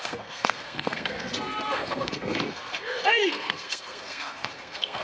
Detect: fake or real fake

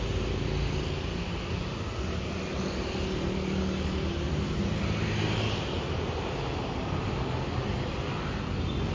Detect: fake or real real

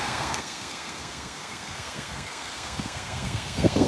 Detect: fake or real fake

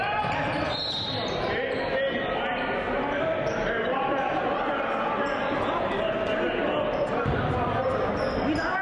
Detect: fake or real real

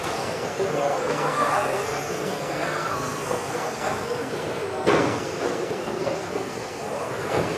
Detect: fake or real fake